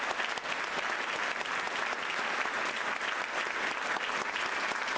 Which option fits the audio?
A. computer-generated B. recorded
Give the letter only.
B